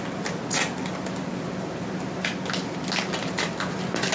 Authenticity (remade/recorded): recorded